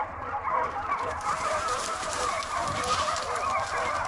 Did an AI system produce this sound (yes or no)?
yes